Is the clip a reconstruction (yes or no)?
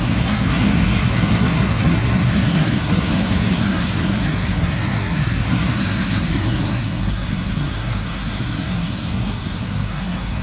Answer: yes